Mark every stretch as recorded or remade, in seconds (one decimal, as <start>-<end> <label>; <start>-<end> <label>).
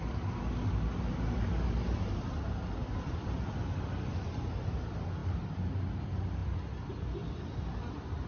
0.0-2.8 recorded; 2.8-3.9 remade; 3.9-5.2 recorded; 5.2-5.9 remade; 5.9-8.3 recorded